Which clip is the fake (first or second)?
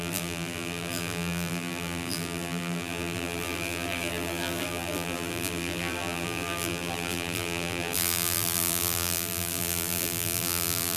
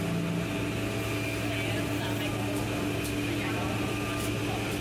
first